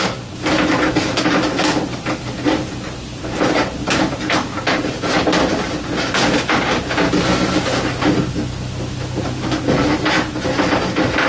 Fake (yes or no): no